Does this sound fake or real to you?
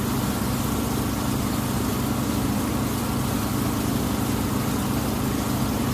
real